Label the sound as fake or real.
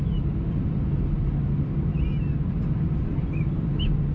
real